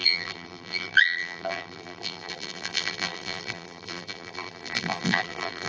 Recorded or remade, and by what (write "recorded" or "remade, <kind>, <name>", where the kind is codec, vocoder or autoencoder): remade, vocoder, BigVGAN v2